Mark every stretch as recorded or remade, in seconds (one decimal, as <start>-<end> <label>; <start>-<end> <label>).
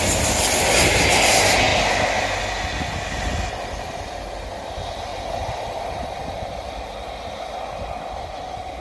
0.0-8.8 recorded